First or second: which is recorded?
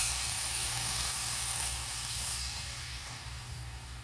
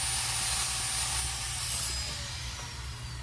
second